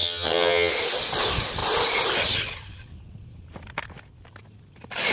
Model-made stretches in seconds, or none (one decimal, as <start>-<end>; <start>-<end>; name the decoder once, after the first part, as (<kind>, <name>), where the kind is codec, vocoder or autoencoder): 0.0-0.7 (vocoder, HiFi-GAN)